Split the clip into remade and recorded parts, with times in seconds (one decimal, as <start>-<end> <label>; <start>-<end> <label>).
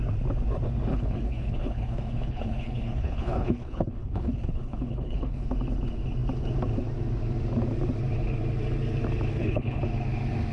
0.0-0.9 recorded; 0.9-5.5 remade; 5.5-9.3 recorded; 9.3-9.8 remade; 9.8-10.5 recorded